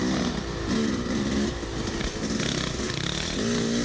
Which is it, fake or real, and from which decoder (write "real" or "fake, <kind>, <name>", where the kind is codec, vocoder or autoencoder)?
real